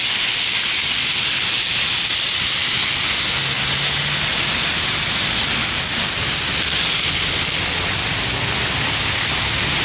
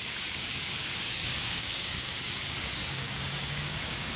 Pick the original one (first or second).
first